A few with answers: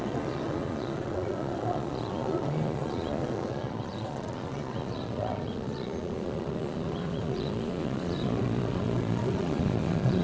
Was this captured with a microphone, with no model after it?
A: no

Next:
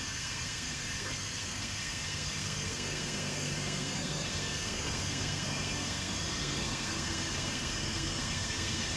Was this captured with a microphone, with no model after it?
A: no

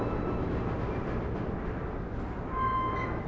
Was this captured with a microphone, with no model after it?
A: yes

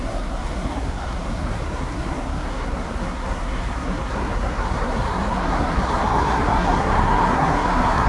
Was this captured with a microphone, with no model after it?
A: no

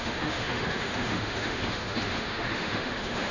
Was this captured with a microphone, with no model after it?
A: no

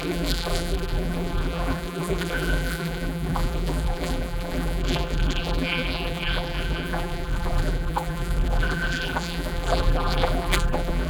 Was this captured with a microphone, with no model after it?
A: no